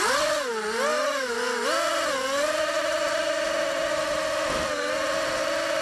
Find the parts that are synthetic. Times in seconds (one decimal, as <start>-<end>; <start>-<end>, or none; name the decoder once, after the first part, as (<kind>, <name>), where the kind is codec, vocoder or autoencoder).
none